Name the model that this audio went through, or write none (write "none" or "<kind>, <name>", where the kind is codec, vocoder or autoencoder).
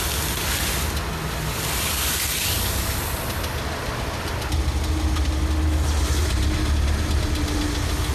none